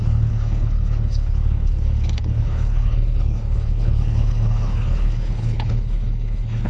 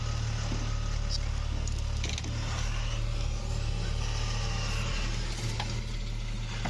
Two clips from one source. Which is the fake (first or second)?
first